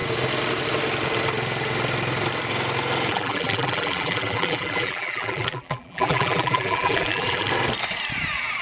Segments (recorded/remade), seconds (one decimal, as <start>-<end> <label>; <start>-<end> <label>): 0.0-3.1 recorded; 3.1-7.5 remade; 7.5-8.6 recorded